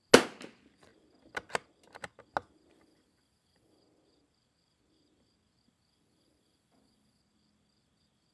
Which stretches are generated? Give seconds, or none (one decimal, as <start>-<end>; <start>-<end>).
none